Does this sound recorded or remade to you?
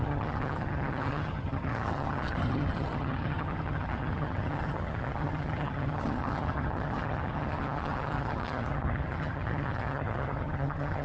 remade